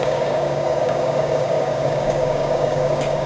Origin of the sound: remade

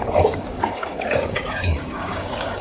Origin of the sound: remade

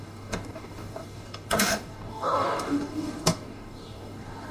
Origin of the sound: remade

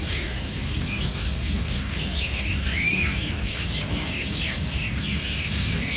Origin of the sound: remade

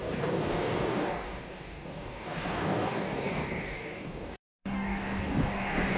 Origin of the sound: remade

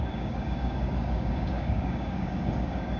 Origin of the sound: remade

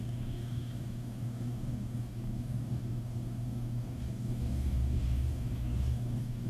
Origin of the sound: remade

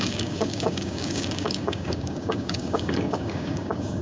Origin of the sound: remade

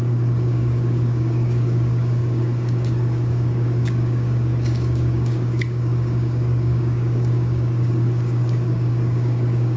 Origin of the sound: remade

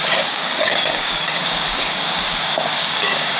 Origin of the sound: remade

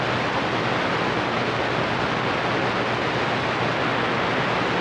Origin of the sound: recorded